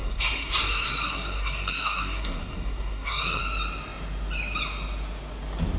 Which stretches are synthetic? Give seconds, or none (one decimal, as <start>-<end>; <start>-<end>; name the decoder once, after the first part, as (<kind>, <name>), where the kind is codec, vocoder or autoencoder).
0.0-3.4 (codec, SNAC)